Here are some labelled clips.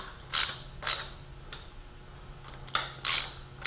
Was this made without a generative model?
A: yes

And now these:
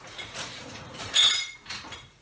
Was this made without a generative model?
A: no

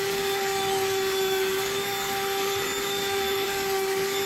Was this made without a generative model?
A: no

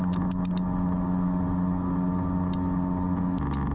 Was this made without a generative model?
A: yes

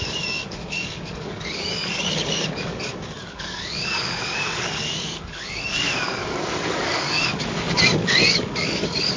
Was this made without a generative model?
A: no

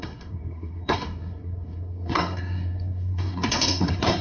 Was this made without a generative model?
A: no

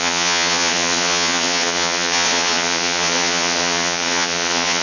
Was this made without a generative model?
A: no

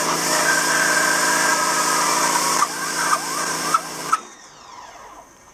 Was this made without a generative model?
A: no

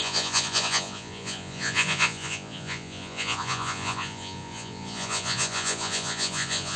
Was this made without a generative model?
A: no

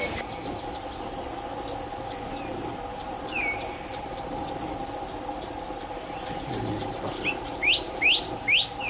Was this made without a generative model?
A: yes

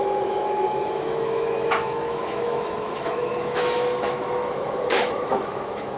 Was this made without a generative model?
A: no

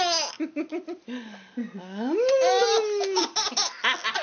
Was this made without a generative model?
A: yes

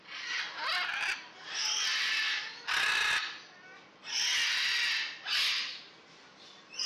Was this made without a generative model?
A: yes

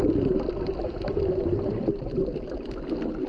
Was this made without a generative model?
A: yes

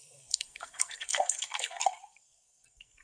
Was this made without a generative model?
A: no